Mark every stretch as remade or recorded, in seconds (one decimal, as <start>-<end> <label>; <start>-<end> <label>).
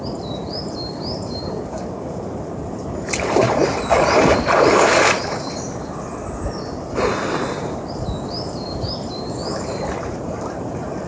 0.0-4.3 remade; 4.3-7.4 recorded; 7.4-11.1 remade